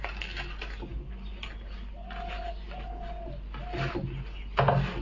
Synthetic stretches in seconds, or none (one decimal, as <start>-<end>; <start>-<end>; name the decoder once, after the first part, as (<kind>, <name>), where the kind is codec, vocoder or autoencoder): none